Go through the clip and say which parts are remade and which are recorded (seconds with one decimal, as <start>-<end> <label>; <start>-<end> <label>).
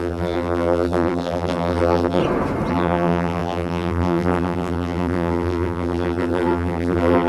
0.0-2.2 remade; 2.2-2.7 recorded; 2.7-7.3 remade